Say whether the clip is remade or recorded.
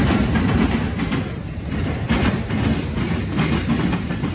recorded